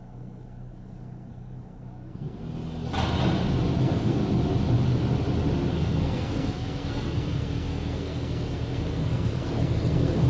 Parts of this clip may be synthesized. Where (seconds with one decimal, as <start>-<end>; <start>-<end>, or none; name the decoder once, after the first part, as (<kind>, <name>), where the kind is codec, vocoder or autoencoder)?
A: 0.0-2.4 (codec, SNAC); 3.8-4.2; 5.7-10.3